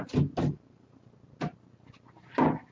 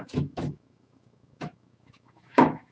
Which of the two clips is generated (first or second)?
second